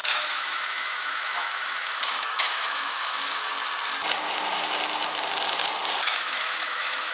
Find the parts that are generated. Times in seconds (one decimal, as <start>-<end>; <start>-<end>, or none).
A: 0.0-3.5; 6.0-7.1